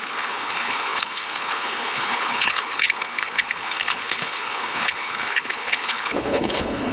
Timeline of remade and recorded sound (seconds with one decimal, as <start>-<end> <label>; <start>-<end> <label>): 0.0-6.9 remade